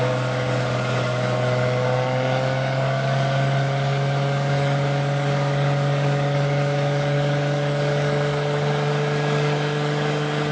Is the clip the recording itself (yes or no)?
no